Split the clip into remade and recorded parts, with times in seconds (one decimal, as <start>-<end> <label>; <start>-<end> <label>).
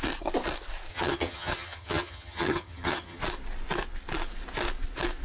0.0-0.9 recorded; 0.9-3.2 remade; 3.2-5.2 recorded